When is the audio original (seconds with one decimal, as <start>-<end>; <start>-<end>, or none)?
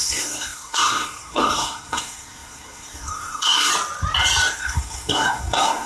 3.7-4.6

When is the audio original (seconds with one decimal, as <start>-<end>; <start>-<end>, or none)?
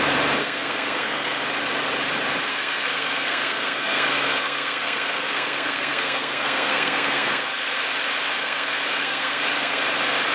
0.0-0.4; 1.4-2.5; 7.6-8.4; 9.8-10.3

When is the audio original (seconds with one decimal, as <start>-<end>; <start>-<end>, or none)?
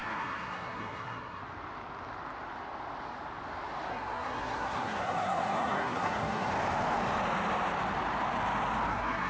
1.4-3.9; 6.5-8.9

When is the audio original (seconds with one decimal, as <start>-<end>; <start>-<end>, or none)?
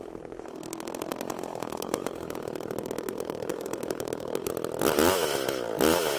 4.5-6.2